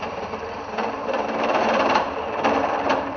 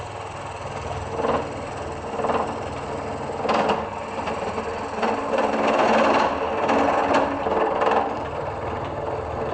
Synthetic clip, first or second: first